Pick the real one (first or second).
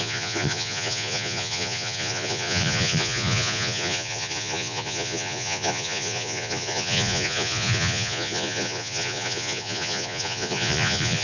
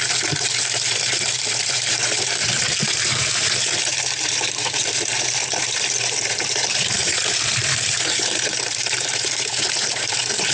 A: second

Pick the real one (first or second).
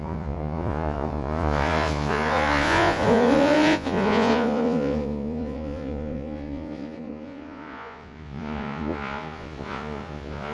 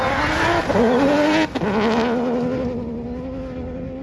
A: second